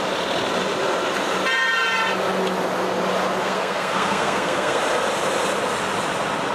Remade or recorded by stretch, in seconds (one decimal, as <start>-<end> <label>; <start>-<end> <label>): 0.0-3.4 recorded; 3.4-4.8 remade; 4.8-6.5 recorded